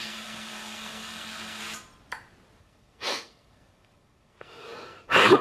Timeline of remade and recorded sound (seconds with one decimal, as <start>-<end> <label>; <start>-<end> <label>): 0.0-1.6 remade; 1.6-2.6 recorded; 2.6-5.4 remade